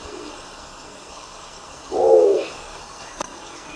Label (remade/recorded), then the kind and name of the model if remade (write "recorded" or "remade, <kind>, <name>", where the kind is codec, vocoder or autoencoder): remade, codec, SNAC